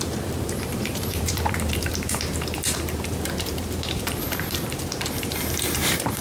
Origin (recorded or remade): remade